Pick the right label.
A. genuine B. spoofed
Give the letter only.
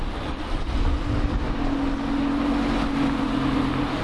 A